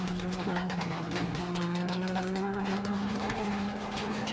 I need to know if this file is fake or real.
fake